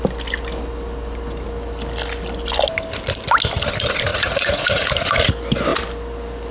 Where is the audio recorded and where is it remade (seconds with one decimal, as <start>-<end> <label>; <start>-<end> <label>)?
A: 0.0-4.1 recorded; 4.1-4.9 remade; 4.9-6.5 recorded